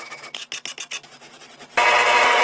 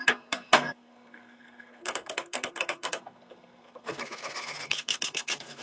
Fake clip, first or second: second